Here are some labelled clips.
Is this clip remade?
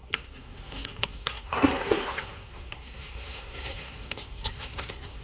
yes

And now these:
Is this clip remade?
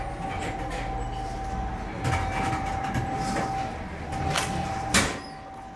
no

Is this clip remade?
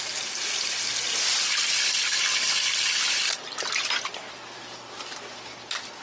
no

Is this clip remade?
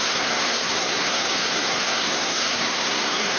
yes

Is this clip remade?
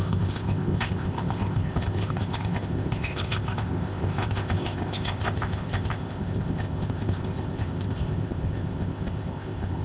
yes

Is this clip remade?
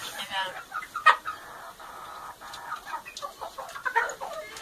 yes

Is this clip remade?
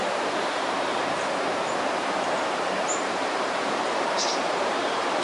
yes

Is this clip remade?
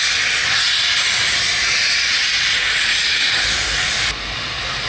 no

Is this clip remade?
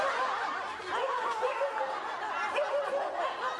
no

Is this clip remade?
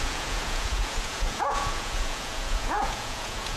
yes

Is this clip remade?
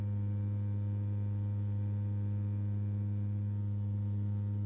no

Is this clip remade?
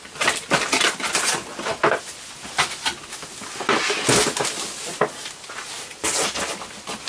no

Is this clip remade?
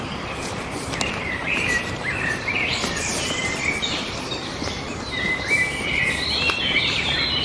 yes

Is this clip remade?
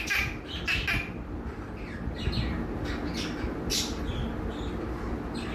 no